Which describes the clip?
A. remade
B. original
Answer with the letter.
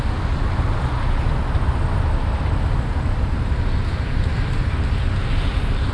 B